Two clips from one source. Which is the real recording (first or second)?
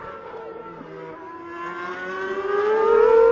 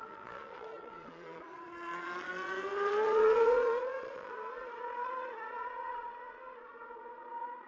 first